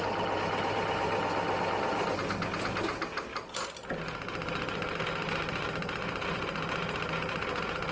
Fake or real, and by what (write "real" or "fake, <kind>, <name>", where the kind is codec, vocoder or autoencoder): real